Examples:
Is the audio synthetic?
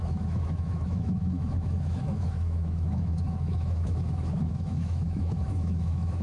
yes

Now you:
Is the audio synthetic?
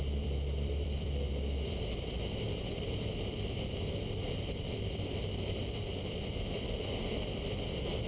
yes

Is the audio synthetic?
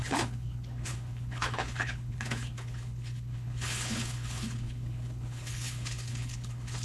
yes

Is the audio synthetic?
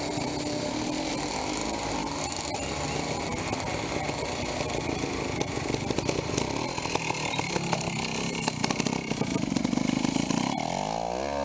no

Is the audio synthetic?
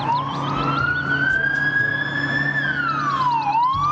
no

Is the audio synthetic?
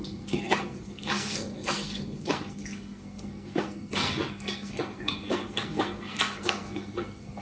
yes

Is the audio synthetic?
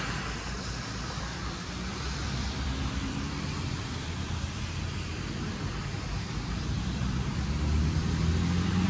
yes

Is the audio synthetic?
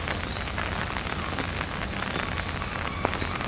no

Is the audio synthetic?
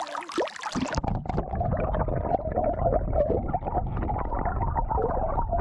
no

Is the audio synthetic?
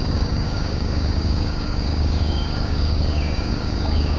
yes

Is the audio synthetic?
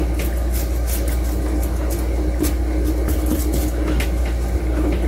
no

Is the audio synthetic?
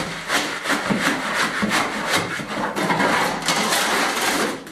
no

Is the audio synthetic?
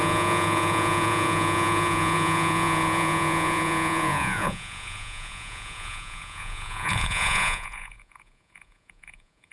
yes